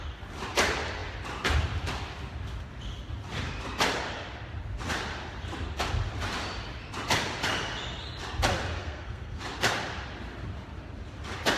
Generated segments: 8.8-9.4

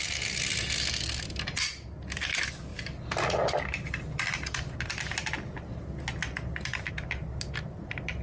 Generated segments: none

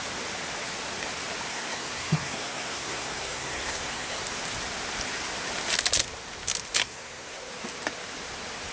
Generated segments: 1.5-4.2; 6.8-7.5

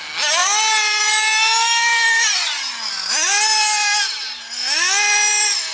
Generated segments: none

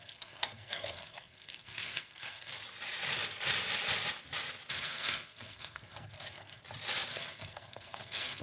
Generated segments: 0.0-2.5; 4.7-6.6; 7.1-8.4

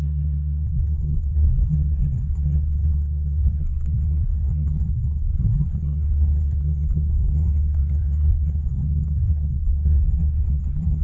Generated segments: 0.0-11.0

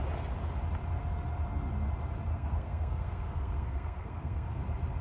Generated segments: 2.3-4.6

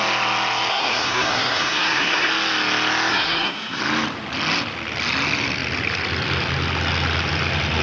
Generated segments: 0.7-2.3; 3.1-3.8